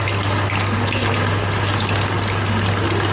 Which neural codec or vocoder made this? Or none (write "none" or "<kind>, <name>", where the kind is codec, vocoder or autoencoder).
none